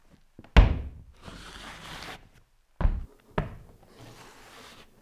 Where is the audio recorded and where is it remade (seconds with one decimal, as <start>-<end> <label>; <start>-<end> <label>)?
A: 0.0-5.0 recorded